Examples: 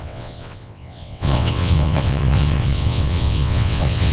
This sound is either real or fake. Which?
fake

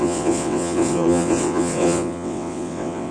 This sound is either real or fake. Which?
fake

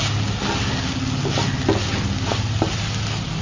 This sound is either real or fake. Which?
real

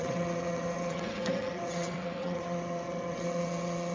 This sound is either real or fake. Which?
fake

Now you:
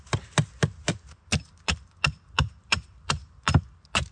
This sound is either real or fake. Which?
real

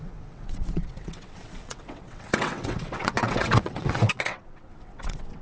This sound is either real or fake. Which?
fake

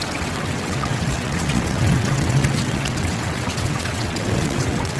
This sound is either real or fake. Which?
fake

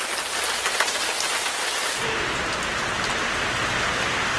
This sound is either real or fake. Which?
real